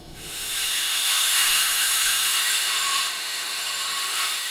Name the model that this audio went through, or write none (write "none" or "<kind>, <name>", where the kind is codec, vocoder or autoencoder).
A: autoencoder, DAC-VAE